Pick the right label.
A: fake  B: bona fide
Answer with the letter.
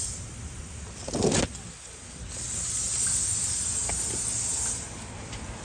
B